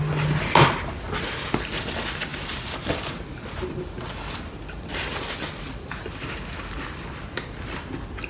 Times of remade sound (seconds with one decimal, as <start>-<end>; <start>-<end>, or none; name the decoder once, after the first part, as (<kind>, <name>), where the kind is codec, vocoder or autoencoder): none